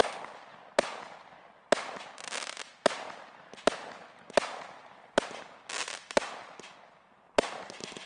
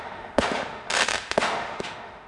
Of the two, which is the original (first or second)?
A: first